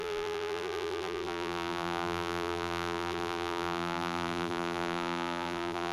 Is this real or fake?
fake